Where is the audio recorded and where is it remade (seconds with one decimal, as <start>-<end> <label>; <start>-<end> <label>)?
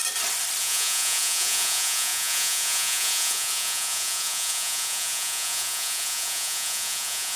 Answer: 0.0-0.6 recorded; 0.6-7.4 remade